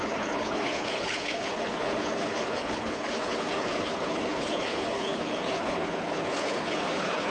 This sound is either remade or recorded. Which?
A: remade